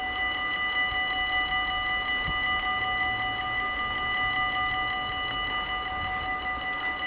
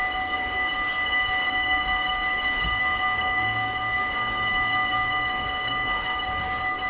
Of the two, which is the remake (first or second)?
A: second